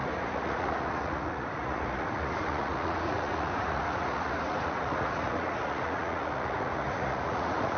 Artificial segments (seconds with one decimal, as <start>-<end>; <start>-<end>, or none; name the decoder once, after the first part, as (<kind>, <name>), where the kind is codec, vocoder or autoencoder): 0.0-7.8 (vocoder, Vocos)